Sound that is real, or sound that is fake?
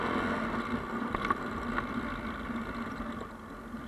real